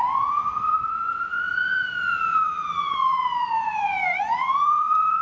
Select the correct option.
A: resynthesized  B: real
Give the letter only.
A